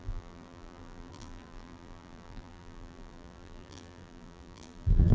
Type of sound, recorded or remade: remade